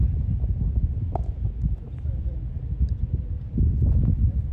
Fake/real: real